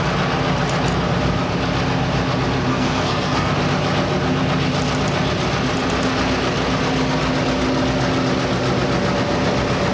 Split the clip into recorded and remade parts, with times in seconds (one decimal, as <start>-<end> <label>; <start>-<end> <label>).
0.0-2.7 recorded; 2.7-3.5 remade; 3.5-9.9 recorded